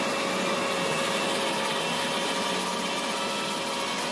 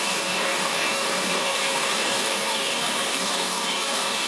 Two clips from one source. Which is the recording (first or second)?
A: first